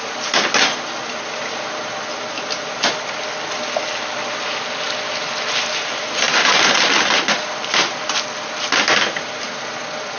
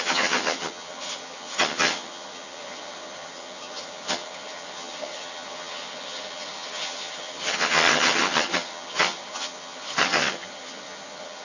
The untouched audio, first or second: first